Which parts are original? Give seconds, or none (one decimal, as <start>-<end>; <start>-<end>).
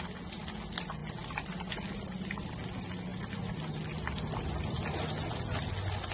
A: 0.0-6.1